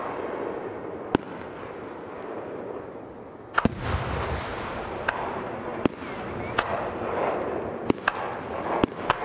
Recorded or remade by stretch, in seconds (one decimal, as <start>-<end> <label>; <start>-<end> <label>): 0.0-9.2 recorded